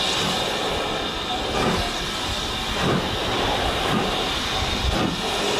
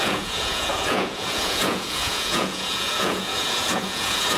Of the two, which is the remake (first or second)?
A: second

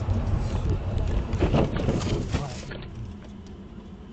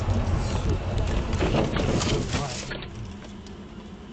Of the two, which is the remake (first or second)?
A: first